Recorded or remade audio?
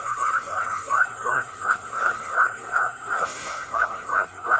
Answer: remade